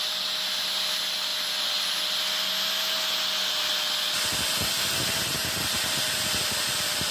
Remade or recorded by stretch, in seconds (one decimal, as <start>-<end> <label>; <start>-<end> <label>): 0.0-7.1 recorded